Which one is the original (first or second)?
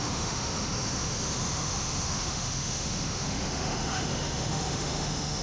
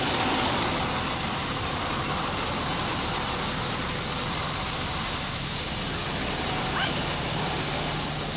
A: second